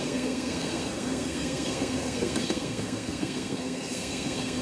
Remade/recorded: remade